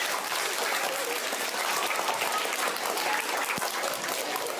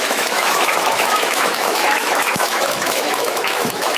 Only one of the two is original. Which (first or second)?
first